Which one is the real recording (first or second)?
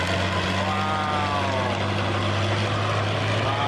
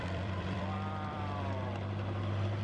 first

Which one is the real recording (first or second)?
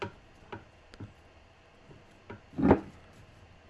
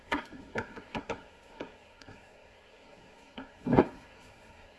first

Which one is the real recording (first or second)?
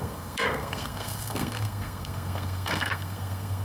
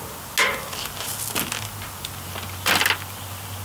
second